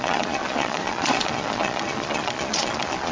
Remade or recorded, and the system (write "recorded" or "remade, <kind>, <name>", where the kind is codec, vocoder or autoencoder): remade, vocoder, Vocos